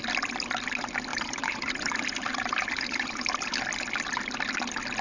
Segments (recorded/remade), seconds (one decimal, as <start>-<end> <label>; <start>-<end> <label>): 0.0-1.1 recorded; 1.1-3.5 remade; 3.5-5.0 recorded